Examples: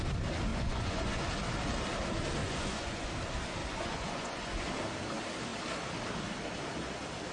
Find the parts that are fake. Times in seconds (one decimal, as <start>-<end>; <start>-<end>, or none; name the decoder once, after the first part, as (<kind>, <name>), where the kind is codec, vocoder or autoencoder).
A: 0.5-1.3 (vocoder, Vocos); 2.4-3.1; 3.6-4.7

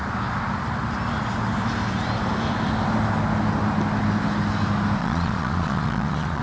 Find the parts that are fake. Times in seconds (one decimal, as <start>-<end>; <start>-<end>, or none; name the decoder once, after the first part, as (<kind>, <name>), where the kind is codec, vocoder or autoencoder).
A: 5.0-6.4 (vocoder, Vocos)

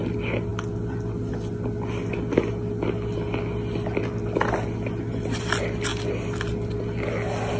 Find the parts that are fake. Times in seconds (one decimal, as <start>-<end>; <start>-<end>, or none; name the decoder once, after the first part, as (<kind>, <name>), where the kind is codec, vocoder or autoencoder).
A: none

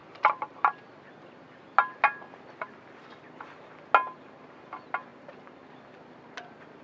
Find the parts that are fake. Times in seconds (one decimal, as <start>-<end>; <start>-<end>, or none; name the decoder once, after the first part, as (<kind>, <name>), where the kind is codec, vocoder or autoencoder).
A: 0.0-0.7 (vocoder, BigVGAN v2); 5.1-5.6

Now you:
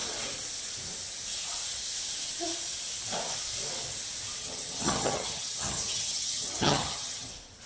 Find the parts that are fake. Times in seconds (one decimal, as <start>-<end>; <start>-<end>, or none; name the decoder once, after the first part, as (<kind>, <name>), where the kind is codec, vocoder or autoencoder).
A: 4.4-7.3 (vocoder, HiFi-GAN)

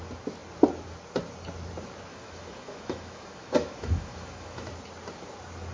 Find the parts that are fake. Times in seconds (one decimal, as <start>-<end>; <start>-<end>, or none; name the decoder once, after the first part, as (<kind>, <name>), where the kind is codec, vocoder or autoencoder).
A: 2.1-4.7 (autoencoder, DAC-VAE)